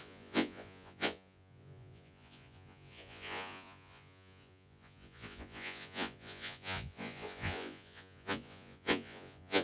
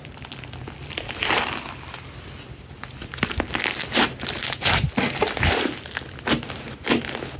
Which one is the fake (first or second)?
first